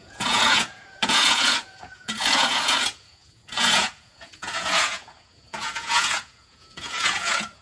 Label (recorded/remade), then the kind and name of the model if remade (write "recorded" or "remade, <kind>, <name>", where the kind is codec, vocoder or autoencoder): remade, vocoder, Vocos